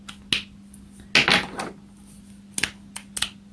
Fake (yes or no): no